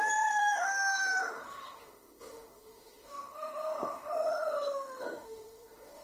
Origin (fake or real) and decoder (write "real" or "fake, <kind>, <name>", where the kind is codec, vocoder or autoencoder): fake, autoencoder, DAC-VAE